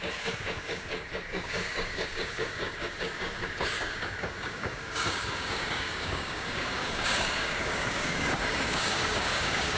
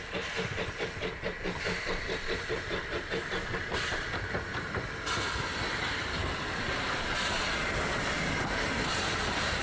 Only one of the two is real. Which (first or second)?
second